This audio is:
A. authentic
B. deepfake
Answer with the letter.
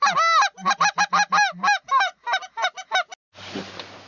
A